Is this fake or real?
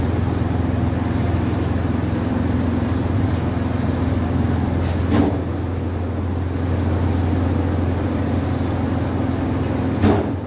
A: real